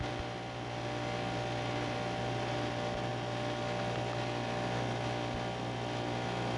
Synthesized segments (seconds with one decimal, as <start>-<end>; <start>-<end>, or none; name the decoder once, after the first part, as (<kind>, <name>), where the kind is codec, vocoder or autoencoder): none